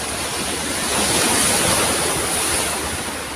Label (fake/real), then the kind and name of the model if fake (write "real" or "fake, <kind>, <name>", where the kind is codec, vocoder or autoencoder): real